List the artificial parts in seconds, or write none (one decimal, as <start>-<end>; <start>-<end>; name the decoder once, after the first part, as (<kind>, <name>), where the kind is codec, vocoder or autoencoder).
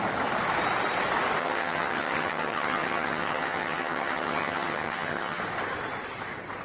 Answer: 1.4-5.4 (vocoder, HiFi-GAN)